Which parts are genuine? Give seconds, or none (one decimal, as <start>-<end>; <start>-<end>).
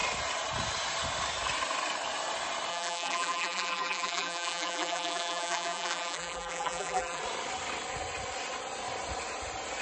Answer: 0.0-2.7; 7.2-9.8